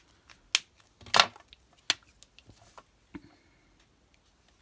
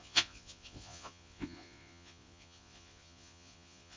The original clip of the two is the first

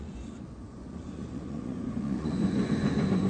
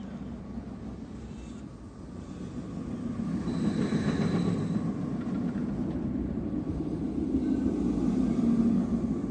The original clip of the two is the second